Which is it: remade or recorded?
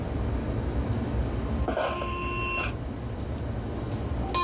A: recorded